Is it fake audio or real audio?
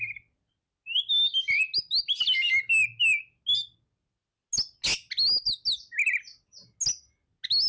real